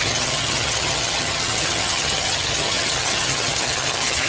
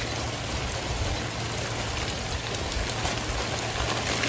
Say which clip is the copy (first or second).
first